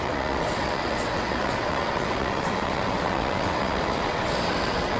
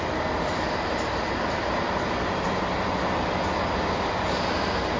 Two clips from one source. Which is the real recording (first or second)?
second